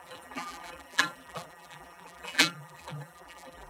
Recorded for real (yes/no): no